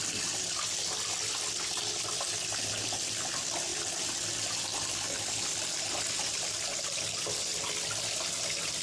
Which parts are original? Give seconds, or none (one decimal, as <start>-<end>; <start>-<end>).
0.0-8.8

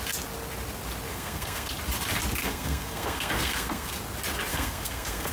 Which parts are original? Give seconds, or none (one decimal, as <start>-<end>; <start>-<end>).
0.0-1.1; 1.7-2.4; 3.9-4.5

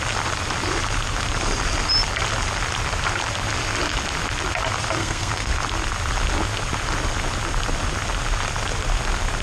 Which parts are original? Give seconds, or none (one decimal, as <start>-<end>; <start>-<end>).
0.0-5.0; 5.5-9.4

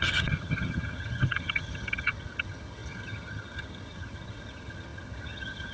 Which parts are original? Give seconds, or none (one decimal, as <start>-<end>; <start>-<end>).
none

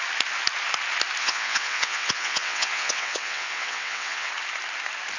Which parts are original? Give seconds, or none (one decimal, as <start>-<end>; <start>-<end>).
0.0-1.2; 4.3-5.2